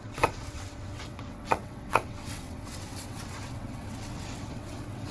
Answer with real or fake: fake